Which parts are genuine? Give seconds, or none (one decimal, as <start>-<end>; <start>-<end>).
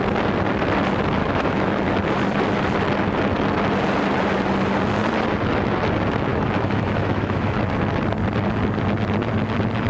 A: 0.0-1.2; 1.9-6.3; 7.5-9.9